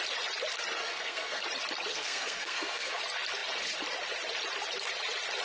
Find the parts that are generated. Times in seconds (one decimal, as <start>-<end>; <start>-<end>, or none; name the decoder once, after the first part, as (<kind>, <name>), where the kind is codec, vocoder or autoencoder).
0.8-1.4 (codec, SNAC); 1.9-3.0